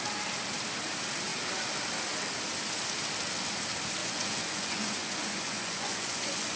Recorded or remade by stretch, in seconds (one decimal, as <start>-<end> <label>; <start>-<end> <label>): 0.0-4.0 recorded; 4.0-6.6 remade